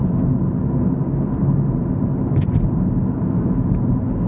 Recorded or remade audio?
recorded